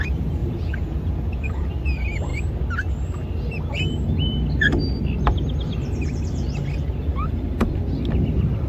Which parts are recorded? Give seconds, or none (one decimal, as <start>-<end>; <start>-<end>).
0.0-0.4; 1.7-8.7